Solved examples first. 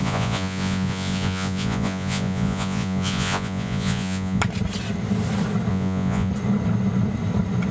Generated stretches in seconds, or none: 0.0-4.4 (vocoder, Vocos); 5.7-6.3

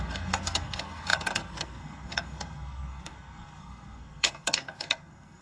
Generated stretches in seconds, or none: 0.0-5.4 (codec, SNAC)

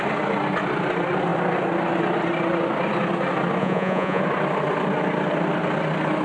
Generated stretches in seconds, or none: 3.6-4.2 (vocoder, Vocos)

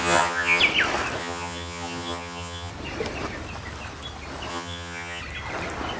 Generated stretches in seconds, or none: 0.0-0.6 (vocoder, HiFi-GAN); 1.2-2.7; 4.5-5.2

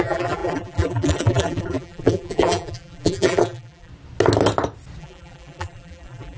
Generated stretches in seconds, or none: 0.0-3.9 (vocoder, BigVGAN v2); 5.0-6.4

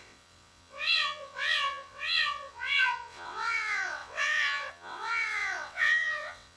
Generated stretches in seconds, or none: 0.0-6.6 (vocoder, WaveNeXt)

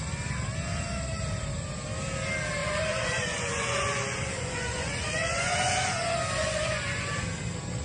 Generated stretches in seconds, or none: 2.6-7.2 (vocoder, Vocos)

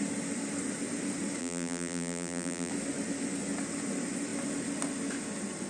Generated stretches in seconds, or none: 1.4-2.7 (vocoder, BigVGAN v2)